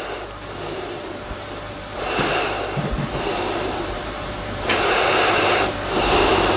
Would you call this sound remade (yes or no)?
yes